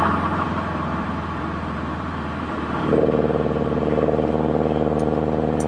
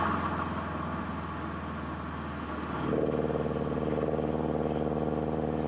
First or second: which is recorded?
second